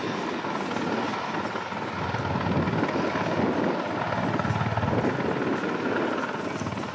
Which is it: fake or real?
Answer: real